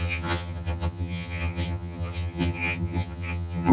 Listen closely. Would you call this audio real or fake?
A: fake